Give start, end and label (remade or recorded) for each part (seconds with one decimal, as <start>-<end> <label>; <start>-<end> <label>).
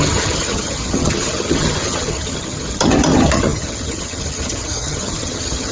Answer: 0.0-5.7 remade